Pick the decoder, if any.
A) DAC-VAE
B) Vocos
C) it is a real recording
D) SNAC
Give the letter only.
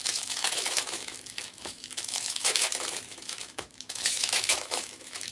A